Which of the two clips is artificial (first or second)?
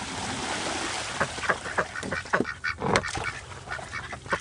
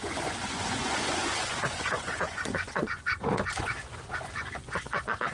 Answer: second